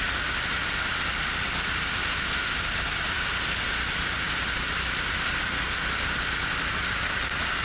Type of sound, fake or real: real